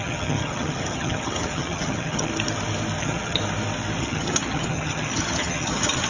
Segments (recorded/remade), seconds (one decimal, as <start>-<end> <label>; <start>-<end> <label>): 0.0-2.3 remade; 2.3-3.0 recorded; 3.0-3.4 remade; 3.4-4.0 recorded; 4.0-6.1 remade